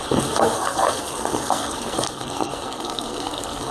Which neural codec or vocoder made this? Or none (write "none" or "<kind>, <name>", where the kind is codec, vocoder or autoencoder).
codec, SNAC